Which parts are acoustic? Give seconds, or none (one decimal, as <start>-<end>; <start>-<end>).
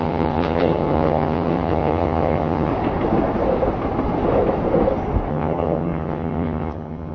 2.7-5.3